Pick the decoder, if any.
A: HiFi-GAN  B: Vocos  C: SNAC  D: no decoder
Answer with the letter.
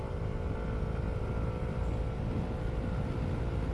D